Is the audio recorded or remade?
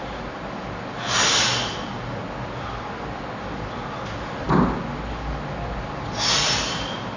recorded